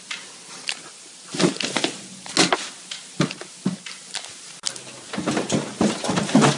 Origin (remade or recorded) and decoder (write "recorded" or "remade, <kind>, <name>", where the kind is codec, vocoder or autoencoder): recorded